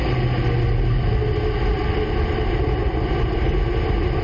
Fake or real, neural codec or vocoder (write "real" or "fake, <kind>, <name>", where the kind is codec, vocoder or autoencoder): real